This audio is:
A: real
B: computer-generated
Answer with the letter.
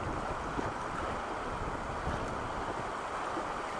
A